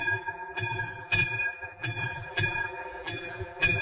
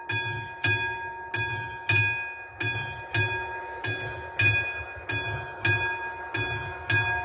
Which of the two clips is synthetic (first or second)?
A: first